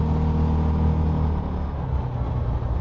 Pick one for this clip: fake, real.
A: real